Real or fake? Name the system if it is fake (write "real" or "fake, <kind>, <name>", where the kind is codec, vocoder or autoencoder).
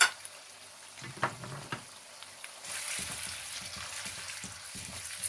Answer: real